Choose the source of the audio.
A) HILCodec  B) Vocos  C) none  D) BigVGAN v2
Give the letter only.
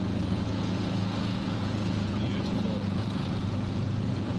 B